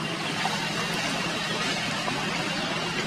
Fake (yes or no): no